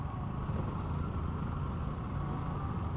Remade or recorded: recorded